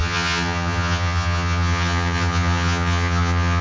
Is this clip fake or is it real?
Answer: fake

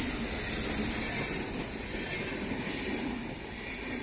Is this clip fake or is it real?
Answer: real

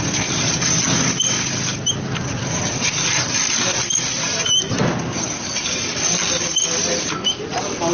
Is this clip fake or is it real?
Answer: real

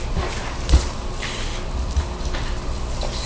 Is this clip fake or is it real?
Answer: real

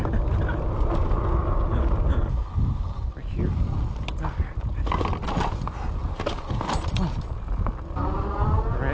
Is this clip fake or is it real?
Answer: real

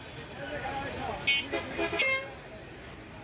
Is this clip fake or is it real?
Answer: real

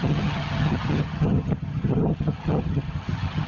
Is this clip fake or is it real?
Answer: fake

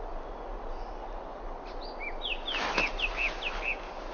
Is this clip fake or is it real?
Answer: real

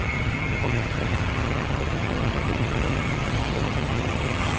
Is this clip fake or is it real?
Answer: fake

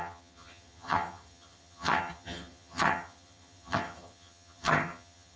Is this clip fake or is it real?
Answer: fake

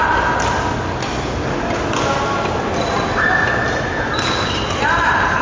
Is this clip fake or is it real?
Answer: real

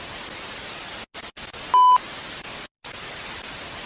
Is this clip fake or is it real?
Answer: real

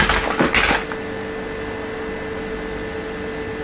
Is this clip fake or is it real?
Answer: real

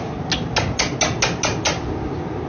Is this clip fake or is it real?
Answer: real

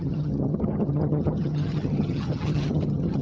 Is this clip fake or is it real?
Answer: fake